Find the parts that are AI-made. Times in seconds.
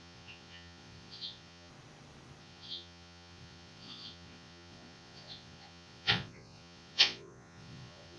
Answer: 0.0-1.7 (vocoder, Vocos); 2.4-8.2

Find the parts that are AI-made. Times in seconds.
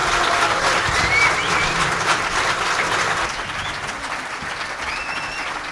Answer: none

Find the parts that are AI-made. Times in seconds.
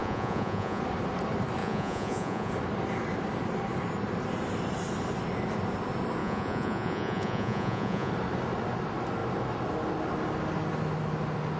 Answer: 0.0-0.8 (vocoder, Vocos); 1.6-2.5; 6.2-8.1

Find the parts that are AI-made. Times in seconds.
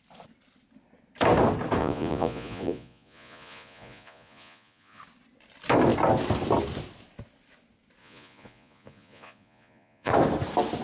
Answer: 1.8-5.0 (vocoder, Vocos); 8.0-10.1